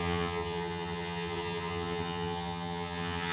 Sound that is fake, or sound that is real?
fake